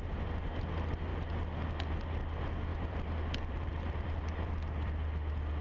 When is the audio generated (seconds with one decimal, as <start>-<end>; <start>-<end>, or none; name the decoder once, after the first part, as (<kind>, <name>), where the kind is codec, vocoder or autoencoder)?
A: 2.7-4.9 (vocoder, BigVGAN v2)